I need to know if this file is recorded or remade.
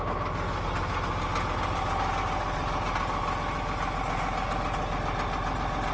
recorded